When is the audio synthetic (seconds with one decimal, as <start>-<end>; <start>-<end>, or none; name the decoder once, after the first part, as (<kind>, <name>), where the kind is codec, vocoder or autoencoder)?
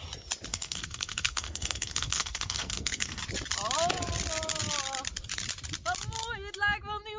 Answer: 0.5-3.2 (codec, SNAC)